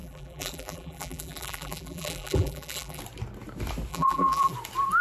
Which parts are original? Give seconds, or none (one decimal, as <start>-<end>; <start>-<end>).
3.0-3.9; 4.5-5.0

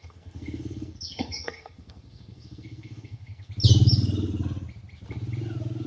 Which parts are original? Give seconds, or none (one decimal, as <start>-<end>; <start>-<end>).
3.5-5.9

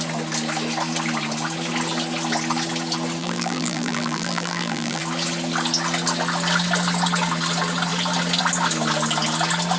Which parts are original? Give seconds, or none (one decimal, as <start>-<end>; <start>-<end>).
0.0-3.2; 5.0-9.8

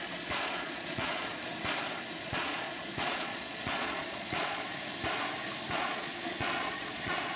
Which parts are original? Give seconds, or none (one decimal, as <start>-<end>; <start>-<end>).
1.3-2.2; 4.7-5.7

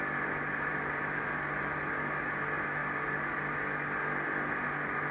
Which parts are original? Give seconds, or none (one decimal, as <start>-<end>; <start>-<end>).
0.0-5.1